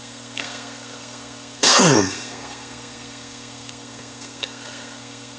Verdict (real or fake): fake